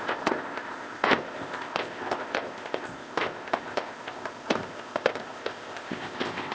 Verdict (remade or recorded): remade